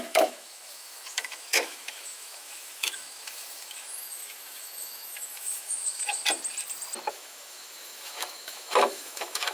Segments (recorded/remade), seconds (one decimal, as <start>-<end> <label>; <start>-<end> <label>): 0.0-6.2 remade; 6.2-7.1 recorded; 7.1-9.5 remade